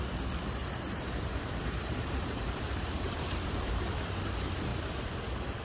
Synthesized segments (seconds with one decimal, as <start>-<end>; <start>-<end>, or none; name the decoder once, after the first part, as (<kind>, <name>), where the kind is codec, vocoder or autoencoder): 0.6-3.9 (vocoder, BigVGAN v2)